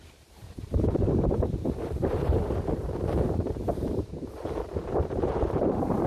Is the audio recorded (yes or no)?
no